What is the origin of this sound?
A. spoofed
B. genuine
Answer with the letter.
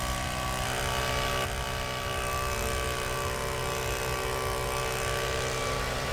B